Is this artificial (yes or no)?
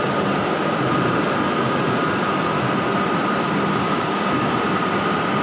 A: no